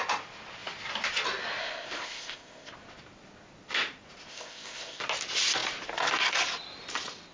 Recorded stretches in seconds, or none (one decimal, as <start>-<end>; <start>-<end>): 0.0-1.6; 2.7-4.3; 5.0-7.3